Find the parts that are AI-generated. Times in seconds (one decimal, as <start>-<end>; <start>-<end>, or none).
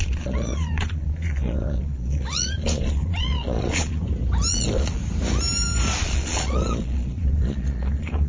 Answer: 0.0-4.0; 4.5-5.0; 6.0-8.3